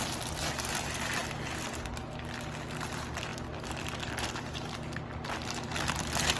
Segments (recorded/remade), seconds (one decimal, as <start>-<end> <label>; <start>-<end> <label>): 0.0-6.4 recorded